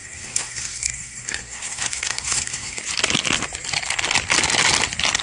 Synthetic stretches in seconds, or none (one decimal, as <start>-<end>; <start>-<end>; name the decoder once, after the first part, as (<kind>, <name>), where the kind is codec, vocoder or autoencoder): 0.0-2.8 (codec, SNAC)